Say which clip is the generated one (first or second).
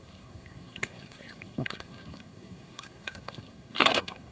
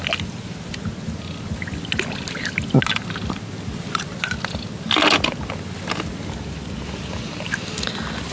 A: first